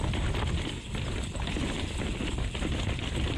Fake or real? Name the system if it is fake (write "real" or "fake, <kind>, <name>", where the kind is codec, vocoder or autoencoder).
real